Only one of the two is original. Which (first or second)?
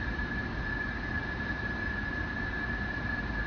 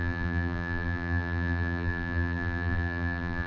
first